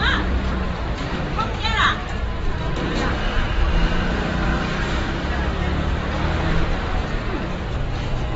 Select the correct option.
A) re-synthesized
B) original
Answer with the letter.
A